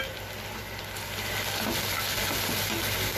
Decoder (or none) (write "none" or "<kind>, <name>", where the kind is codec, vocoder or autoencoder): none